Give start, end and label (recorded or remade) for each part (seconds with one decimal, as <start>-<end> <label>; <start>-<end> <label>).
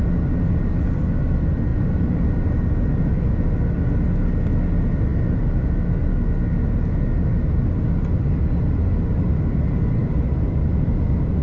0.0-1.7 recorded; 1.7-2.6 remade; 2.6-10.0 recorded; 10.0-10.9 remade; 10.9-11.4 recorded